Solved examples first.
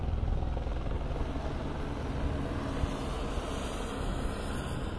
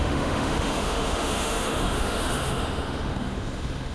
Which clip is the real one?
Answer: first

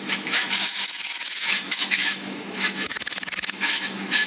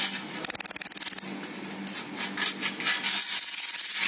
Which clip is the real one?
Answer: second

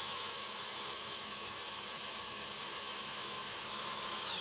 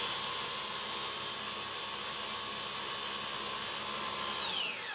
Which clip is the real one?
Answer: second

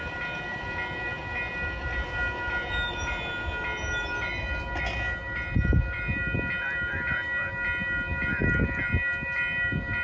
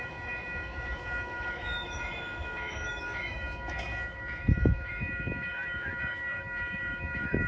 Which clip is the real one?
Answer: first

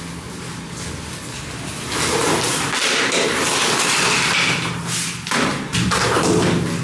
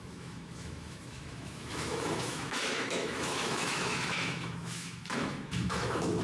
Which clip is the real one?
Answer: first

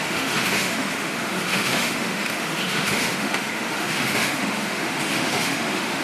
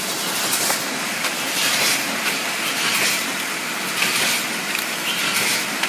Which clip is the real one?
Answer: second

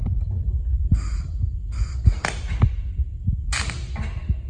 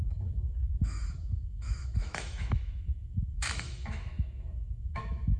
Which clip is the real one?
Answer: first